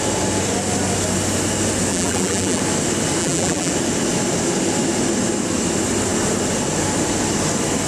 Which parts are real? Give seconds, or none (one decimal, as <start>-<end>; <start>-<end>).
0.0-1.9; 2.6-3.2; 3.7-7.9